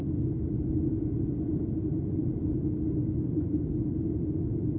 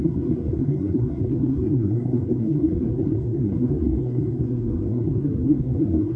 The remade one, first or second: second